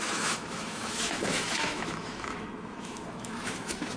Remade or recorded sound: remade